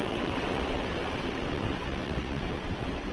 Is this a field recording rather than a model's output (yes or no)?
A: no